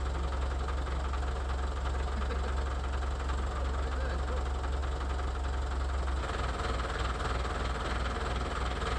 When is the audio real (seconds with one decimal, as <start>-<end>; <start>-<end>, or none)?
0.0-9.0